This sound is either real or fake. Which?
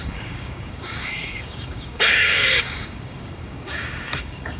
fake